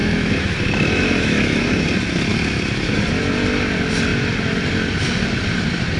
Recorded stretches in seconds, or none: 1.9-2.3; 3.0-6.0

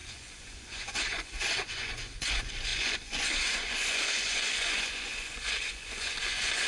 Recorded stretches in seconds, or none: none

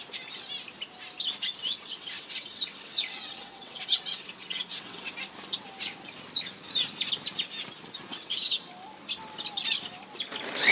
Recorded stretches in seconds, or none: 0.0-1.6; 5.1-8.1; 8.7-10.7

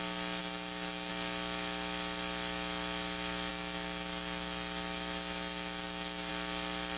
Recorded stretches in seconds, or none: 0.0-0.4; 1.1-3.5; 6.3-7.0

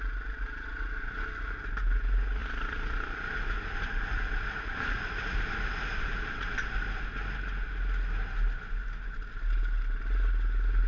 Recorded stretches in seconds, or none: 0.0-2.4; 6.1-10.9

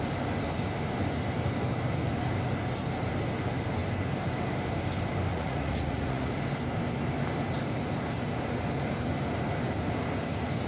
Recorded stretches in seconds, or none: 0.0-5.3; 6.4-10.7

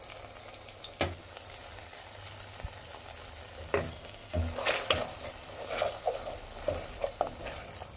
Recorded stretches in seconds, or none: 0.0-3.9; 4.4-8.0